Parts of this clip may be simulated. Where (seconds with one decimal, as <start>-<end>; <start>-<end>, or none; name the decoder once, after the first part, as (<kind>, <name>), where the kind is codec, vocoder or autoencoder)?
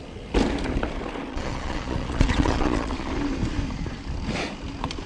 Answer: 1.3-3.1 (vocoder, Vocos)